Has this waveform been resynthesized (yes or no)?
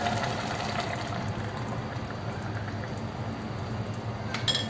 no